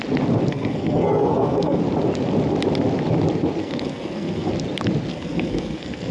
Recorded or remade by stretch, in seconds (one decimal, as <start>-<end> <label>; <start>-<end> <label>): 0.0-0.5 recorded; 0.5-1.8 remade; 1.8-3.6 recorded; 3.6-4.5 remade; 4.5-5.1 recorded; 5.1-6.1 remade